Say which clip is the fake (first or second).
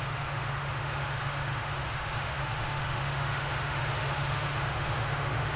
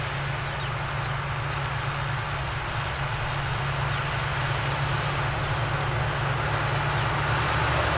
first